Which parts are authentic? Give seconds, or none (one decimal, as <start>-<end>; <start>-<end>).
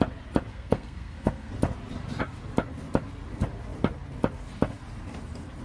0.0-0.5; 1.5-5.6